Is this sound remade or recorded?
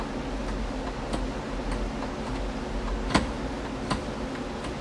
recorded